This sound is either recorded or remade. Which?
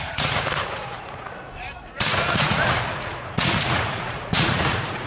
remade